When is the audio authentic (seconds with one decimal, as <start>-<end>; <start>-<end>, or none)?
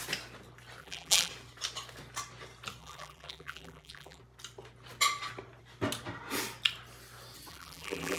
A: 0.0-0.8; 1.3-2.8; 4.2-7.5